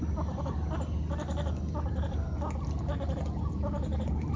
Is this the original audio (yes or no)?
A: yes